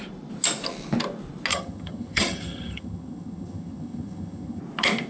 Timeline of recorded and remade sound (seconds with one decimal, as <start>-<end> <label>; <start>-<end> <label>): 0.0-1.5 recorded; 1.5-4.6 remade; 4.6-5.1 recorded